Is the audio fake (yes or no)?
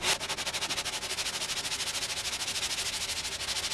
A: no